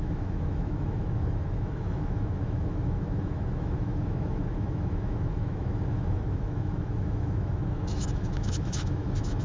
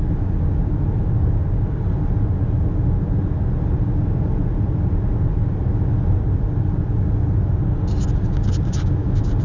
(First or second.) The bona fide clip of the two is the second